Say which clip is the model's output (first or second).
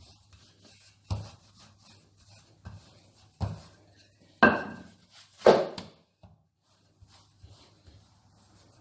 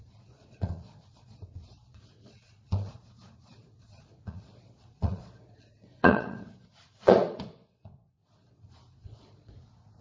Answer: second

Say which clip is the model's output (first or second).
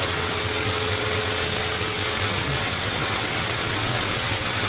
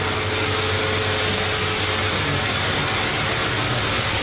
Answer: first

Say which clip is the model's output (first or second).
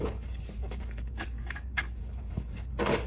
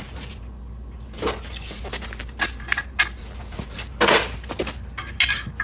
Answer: first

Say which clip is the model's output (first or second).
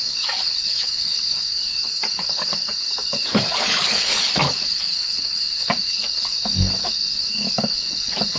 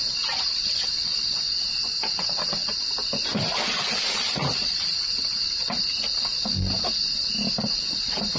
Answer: first